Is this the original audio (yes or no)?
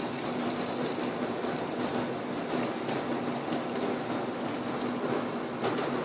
yes